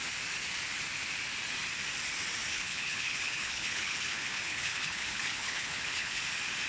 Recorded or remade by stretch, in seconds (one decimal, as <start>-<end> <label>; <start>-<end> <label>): 0.0-2.5 recorded; 2.5-6.2 remade; 6.2-6.7 recorded